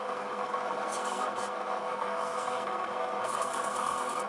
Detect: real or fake fake